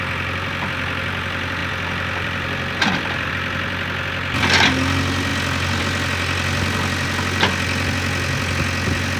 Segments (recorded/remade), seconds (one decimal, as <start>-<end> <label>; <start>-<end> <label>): 0.0-1.6 recorded; 1.6-3.3 remade; 3.3-9.2 recorded